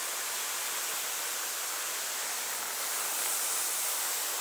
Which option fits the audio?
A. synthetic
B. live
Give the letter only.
B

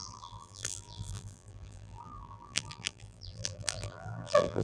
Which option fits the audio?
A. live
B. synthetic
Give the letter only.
B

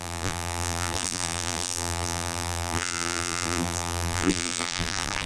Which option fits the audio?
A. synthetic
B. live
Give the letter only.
A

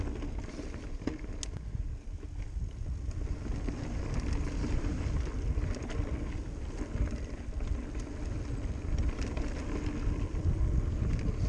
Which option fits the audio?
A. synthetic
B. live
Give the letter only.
B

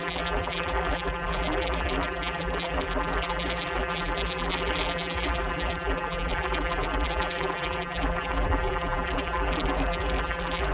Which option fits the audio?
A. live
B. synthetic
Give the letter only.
B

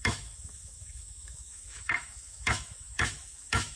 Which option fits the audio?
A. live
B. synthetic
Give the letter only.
B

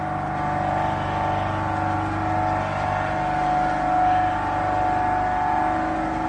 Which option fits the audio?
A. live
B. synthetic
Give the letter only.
A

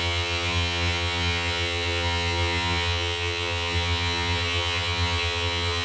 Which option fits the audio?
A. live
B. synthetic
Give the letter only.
B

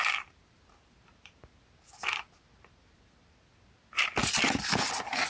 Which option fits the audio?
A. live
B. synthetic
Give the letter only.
A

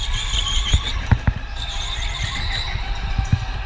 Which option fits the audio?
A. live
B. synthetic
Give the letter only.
A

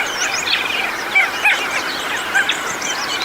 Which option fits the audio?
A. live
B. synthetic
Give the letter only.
A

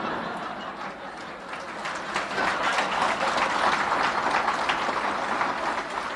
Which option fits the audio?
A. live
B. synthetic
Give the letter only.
A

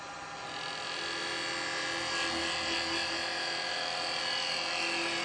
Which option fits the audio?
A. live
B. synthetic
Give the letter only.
A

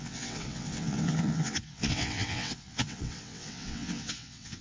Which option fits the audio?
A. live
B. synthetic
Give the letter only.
B